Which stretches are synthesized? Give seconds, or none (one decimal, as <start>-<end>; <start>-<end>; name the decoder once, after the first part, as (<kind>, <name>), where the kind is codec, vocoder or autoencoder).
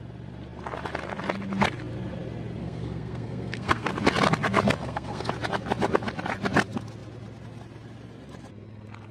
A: 2.6-3.9 (codec, SNAC); 4.8-5.3